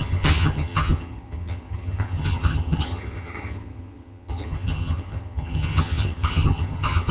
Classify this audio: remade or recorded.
remade